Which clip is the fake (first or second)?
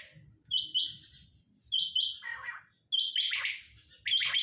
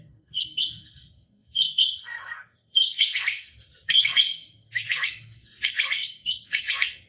second